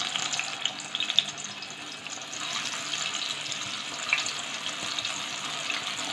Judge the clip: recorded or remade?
recorded